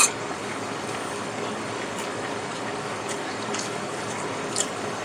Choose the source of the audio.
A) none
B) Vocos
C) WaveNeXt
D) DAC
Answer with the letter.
D